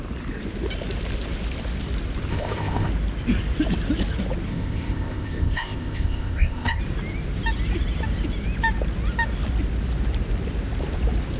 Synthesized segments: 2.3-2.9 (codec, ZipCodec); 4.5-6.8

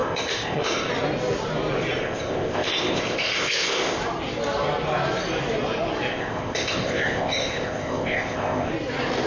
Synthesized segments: 0.0-0.9 (codec, ZipCodec); 2.0-4.0; 6.1-8.7

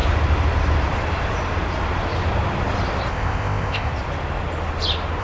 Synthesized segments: 3.1-3.9 (codec, ZipCodec)

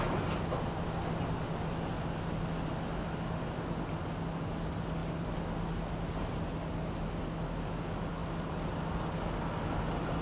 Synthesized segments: none